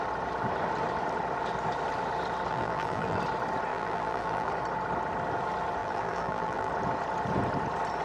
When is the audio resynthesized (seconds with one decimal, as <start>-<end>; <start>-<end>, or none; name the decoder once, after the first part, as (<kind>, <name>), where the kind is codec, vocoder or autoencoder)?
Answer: 2.5-3.2 (vocoder, BigVGAN v2); 3.7-4.5; 5.8-6.7